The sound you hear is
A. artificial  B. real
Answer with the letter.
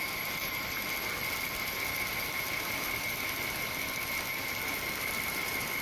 B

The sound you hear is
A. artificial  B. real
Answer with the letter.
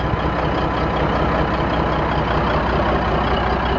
B